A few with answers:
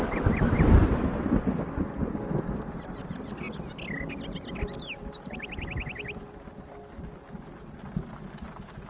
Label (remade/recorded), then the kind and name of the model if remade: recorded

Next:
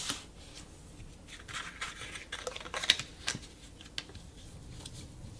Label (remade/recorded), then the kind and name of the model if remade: recorded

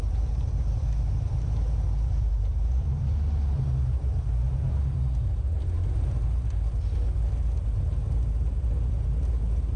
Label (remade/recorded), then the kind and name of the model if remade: recorded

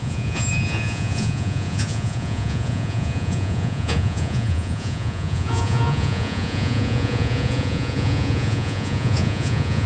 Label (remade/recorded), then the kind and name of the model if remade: remade, vocoder, Vocos